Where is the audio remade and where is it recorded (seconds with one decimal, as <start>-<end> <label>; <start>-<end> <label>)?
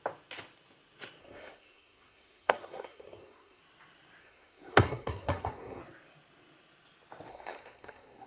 0.0-1.2 recorded; 1.2-3.6 remade; 3.6-4.2 recorded; 4.2-5.8 remade; 5.8-7.3 recorded; 7.3-8.3 remade